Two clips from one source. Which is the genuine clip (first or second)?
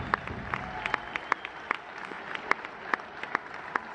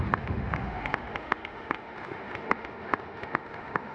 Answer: first